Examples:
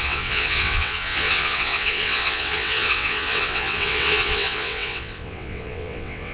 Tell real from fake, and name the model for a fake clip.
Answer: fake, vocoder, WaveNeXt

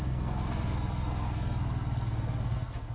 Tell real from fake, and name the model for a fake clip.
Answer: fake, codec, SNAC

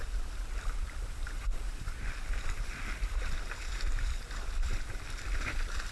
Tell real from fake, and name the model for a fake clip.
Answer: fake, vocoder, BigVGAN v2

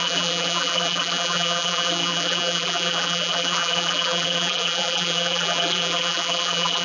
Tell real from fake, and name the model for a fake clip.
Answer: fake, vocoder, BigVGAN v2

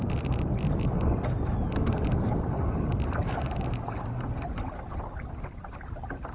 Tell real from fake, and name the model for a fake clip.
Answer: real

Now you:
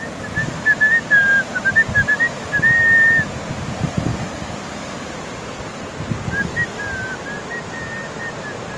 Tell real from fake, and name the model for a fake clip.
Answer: real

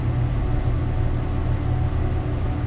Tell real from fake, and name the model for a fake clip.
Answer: real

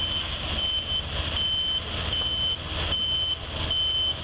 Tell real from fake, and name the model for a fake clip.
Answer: real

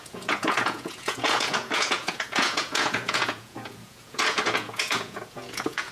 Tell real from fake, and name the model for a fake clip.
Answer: fake, vocoder, Vocos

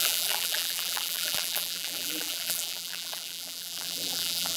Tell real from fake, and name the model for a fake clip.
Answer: fake, vocoder, BigVGAN v2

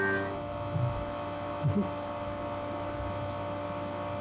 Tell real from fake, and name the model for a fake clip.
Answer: real